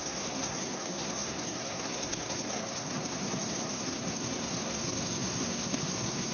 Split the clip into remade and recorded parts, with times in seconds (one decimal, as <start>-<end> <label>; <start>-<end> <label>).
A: 0.0-6.3 remade